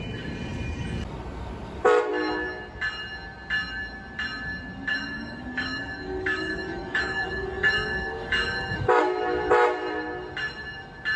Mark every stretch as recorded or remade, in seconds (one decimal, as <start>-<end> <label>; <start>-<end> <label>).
0.0-4.9 recorded; 4.9-9.0 remade; 9.0-11.2 recorded